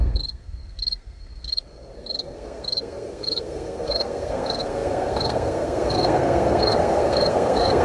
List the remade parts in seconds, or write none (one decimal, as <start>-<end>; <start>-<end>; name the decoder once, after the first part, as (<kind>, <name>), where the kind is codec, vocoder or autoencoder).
0.0-7.8 (codec, SNAC)